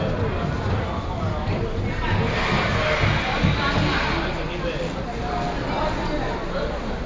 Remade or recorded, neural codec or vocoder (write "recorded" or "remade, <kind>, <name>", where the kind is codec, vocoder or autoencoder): recorded